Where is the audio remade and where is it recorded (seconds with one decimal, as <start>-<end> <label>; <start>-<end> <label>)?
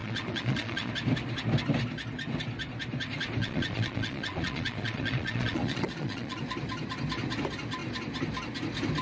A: 0.0-0.9 remade; 0.9-3.4 recorded; 3.4-6.4 remade; 6.4-9.0 recorded